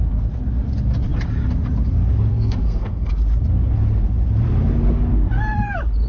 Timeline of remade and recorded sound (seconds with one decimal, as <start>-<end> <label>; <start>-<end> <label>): 0.0-2.3 recorded; 2.3-3.1 remade; 3.1-6.1 recorded

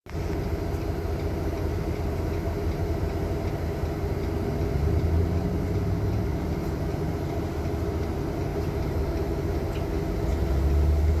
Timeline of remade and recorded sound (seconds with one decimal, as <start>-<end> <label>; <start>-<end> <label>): 0.0-8.5 recorded; 8.5-9.1 remade; 9.1-11.2 recorded

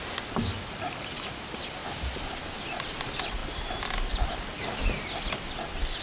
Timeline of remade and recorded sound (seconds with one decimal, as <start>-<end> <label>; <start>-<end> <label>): 0.0-6.0 recorded

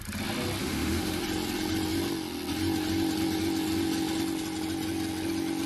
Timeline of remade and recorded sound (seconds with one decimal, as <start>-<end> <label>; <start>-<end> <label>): 0.0-0.6 recorded; 0.6-1.2 remade; 1.2-5.7 recorded